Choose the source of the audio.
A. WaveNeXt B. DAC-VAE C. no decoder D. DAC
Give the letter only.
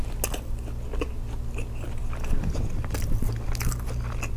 C